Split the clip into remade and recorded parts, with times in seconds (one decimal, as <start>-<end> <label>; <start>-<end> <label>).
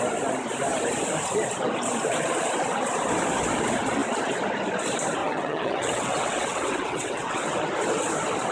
0.0-5.2 recorded; 5.2-7.5 remade; 7.5-8.5 recorded